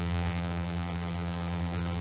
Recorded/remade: remade